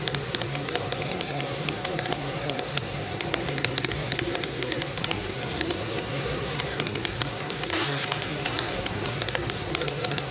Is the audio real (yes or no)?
no